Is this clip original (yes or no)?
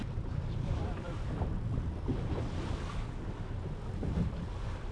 no